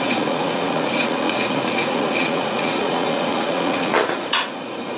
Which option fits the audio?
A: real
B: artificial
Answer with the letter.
B